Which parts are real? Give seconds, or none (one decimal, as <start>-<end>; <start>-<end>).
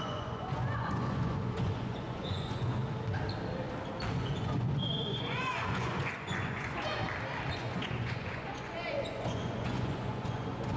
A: 2.8-4.1; 7.0-7.5